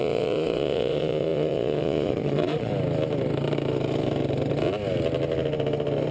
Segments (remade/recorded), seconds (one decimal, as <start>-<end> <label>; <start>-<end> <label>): 0.0-2.7 remade; 2.7-6.1 recorded